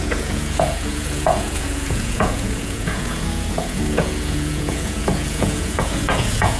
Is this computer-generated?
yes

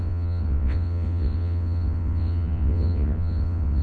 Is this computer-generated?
yes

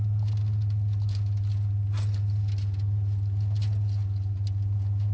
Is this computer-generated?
no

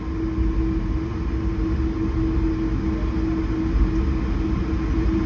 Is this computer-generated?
no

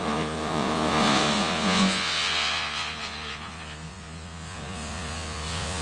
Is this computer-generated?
yes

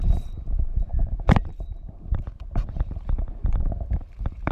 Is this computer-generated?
yes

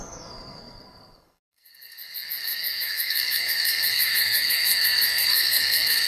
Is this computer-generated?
yes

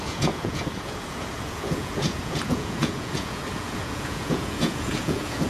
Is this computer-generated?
yes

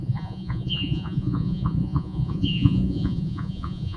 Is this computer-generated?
yes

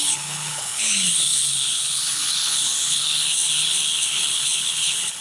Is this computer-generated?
yes